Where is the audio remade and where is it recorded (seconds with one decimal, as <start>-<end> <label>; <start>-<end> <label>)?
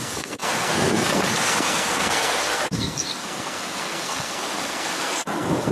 0.0-5.7 remade